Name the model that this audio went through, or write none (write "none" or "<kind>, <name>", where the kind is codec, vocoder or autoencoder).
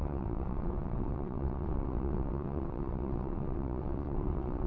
vocoder, WaveNeXt